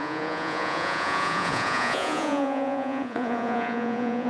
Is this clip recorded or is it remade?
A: remade